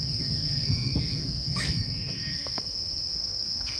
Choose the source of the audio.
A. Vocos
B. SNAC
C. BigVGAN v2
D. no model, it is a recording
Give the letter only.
B